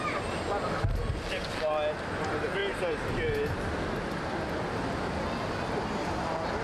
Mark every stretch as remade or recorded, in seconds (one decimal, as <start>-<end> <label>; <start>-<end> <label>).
0.0-6.6 recorded